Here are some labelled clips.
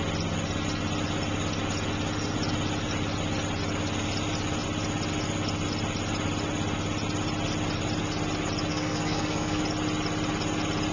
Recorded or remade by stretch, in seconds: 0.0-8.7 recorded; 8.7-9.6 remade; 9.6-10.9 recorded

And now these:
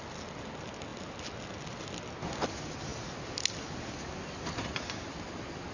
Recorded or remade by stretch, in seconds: 0.0-5.7 recorded

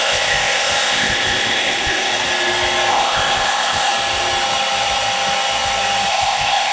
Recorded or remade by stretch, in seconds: 0.0-2.1 remade; 2.1-2.9 recorded; 2.9-3.9 remade; 3.9-6.1 recorded; 6.1-6.7 remade

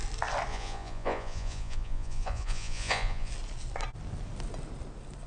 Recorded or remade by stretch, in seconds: 0.0-0.5 recorded; 0.5-3.3 remade; 3.3-5.3 recorded

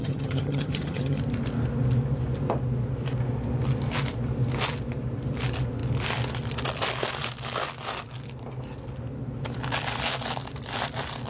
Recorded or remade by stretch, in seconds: 0.0-1.2 remade; 1.2-11.3 recorded